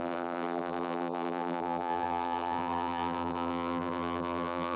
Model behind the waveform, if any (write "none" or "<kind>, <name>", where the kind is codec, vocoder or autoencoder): vocoder, BigVGAN v2